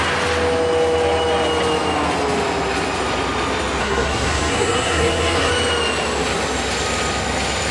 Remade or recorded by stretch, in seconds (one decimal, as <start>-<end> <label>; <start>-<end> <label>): 0.0-3.8 recorded; 3.8-5.5 remade; 5.5-7.7 recorded